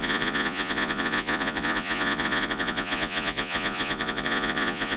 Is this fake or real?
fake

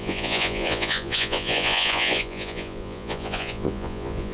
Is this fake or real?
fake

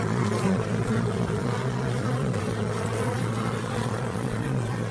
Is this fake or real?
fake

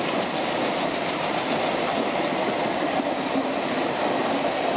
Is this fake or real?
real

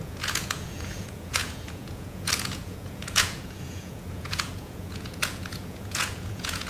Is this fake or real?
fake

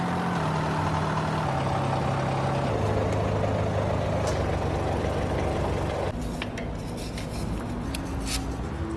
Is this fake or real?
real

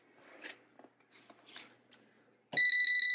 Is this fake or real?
real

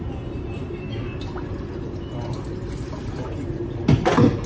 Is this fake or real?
real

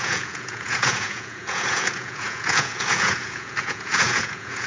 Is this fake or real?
fake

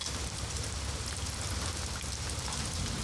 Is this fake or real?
real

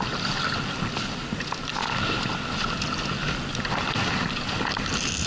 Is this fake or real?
real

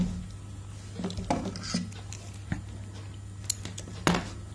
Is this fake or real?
real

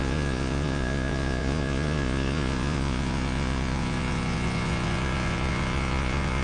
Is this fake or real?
fake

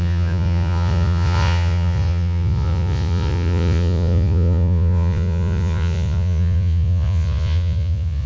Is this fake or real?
fake